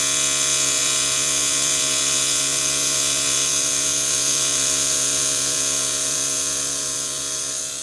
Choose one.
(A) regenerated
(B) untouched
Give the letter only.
A